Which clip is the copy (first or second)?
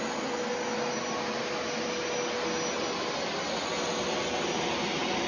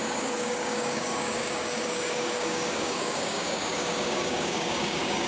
second